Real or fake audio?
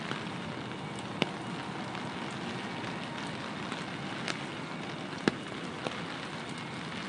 real